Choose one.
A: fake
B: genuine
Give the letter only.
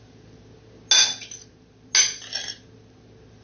B